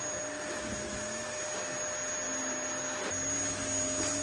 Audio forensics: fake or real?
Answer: real